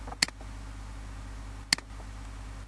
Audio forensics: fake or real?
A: real